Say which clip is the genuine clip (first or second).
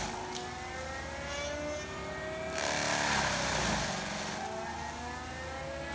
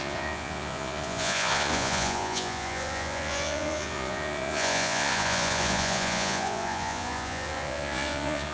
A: first